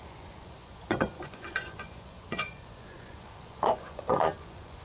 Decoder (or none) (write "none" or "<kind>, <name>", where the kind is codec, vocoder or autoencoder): vocoder, Vocos